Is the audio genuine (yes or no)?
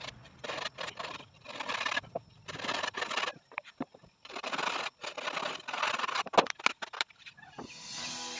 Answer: yes